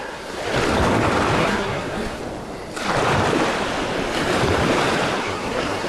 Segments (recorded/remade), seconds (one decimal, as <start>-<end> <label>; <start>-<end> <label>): 0.0-0.4 remade; 0.4-1.4 recorded; 1.4-2.2 remade; 2.2-5.2 recorded; 5.2-5.9 remade